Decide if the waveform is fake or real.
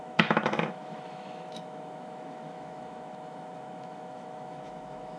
fake